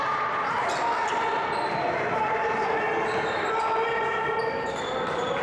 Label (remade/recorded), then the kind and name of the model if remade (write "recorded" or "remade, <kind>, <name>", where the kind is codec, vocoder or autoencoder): recorded